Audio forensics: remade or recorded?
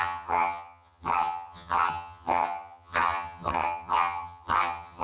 remade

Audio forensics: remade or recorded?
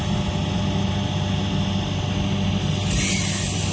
recorded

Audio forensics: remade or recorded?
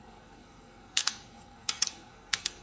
remade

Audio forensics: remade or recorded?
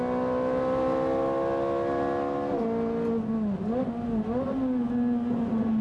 recorded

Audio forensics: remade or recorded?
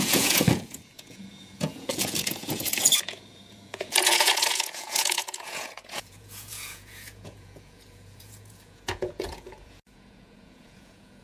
remade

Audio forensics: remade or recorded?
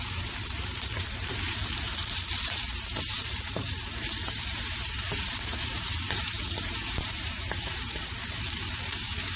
remade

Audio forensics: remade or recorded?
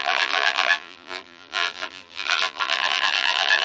remade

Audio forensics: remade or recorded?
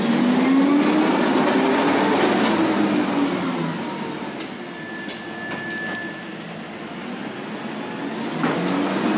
recorded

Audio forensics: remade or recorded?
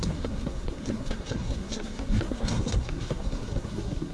remade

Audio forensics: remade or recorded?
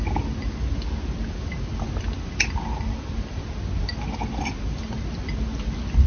recorded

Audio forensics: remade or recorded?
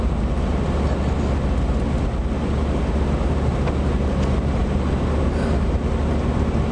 recorded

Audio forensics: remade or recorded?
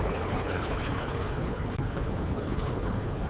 remade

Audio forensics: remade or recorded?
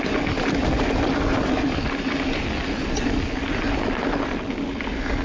recorded